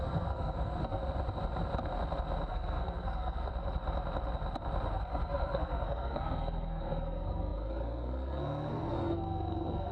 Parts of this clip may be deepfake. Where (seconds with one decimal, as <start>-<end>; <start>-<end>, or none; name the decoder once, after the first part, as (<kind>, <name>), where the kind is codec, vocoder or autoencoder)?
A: 0.0-1.0 (codec, SNAC); 2.5-3.5; 4.9-9.9